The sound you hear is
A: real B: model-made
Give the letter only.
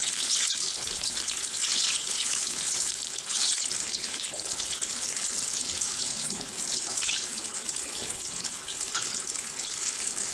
B